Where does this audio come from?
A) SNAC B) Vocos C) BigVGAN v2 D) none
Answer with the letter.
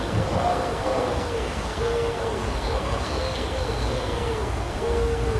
A